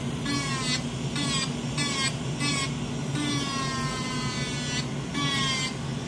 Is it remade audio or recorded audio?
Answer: recorded